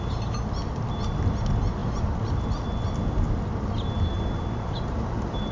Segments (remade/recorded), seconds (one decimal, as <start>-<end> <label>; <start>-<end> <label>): 0.0-1.8 recorded; 1.8-2.3 remade; 2.3-4.1 recorded; 4.1-5.5 remade